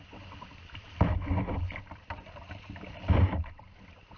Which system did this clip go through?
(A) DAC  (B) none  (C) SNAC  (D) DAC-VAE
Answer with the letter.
B